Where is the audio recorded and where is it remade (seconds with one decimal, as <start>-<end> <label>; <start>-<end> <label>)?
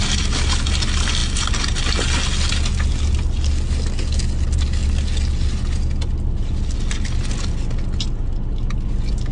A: 0.0-9.3 recorded